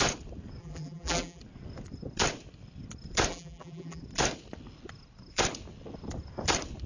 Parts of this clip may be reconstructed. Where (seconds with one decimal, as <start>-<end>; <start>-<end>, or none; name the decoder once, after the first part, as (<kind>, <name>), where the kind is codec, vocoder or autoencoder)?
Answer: 0.6-1.4 (vocoder, BigVGAN v2); 3.3-4.0